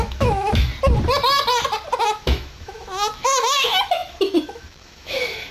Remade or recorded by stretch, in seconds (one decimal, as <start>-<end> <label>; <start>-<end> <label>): 0.0-0.7 remade; 0.7-2.0 recorded; 2.0-5.5 remade